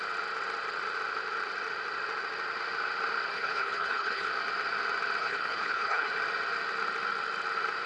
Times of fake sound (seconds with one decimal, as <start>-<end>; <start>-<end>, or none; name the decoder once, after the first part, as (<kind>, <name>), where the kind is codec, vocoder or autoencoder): 3.3-4.3 (codec, HILCodec); 5.2-6.1